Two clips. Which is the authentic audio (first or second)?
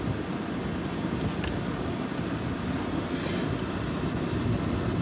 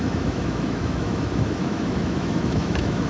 first